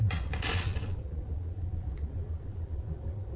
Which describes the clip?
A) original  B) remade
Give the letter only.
B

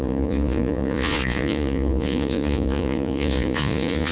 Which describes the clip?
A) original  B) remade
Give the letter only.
B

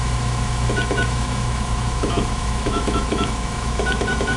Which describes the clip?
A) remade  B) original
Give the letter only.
A